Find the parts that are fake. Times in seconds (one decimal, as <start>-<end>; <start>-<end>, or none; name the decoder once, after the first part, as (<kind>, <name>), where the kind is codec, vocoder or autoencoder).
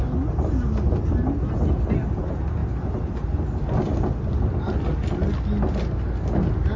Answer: none